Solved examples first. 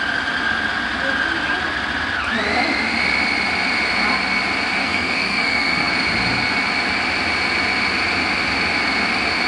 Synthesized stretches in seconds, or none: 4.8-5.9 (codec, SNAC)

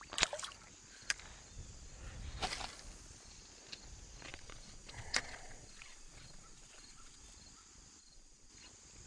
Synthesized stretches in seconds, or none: 4.3-7.2 (vocoder, Vocos); 8.0-8.5

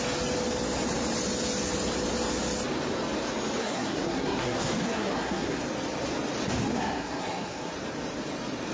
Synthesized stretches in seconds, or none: 3.6-5.6 (codec, SNAC); 6.7-7.7

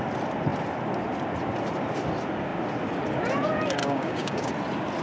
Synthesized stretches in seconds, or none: 3.8-4.5 (codec, DAC)

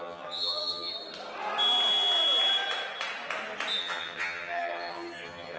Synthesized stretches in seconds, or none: 0.0-0.9 (vocoder, HiFi-GAN); 3.8-5.6

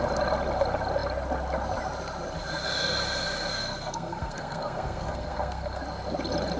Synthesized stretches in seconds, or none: 3.5-5.8 (codec, SNAC)